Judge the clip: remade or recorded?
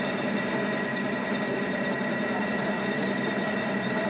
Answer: remade